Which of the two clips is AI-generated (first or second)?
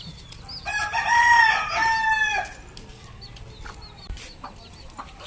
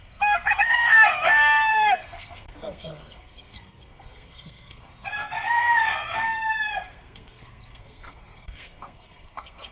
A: second